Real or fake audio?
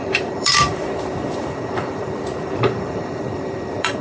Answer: fake